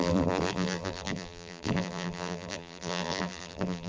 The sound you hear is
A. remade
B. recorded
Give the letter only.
A